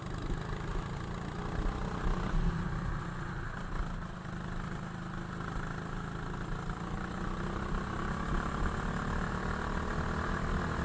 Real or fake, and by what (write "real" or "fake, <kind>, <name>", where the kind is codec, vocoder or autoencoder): real